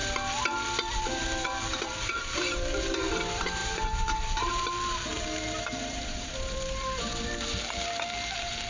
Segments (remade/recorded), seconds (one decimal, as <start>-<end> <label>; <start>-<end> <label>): 0.0-1.0 recorded; 1.0-8.7 remade

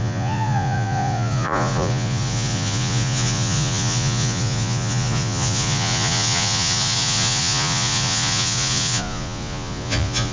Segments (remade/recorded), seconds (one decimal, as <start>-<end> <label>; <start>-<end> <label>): 0.0-10.3 remade

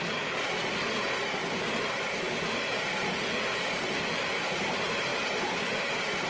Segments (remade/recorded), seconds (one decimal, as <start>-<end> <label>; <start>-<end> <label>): 0.0-6.3 recorded

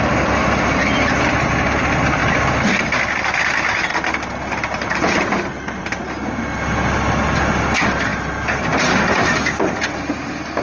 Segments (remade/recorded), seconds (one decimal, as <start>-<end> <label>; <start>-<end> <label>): 0.0-10.6 recorded

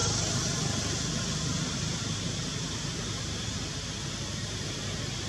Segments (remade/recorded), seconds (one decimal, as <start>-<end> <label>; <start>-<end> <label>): 0.0-5.3 recorded

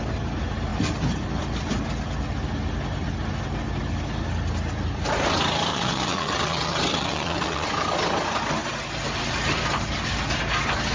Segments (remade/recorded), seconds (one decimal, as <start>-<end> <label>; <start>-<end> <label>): 0.0-5.7 recorded; 5.7-7.7 remade; 7.7-10.9 recorded